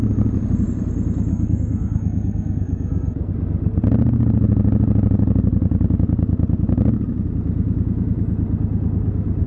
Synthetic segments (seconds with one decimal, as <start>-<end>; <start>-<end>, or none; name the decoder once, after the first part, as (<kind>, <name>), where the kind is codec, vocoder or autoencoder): 1.3-3.3 (codec, SNAC)